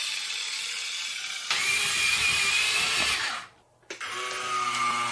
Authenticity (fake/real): real